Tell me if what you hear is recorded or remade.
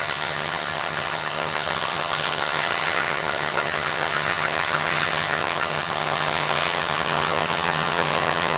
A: remade